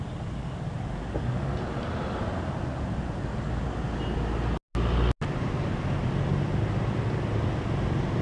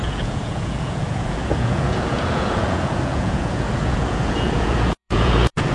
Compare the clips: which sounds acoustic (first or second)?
first